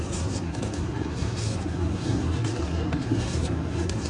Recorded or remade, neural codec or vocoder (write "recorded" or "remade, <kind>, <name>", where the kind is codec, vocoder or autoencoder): remade, codec, SNAC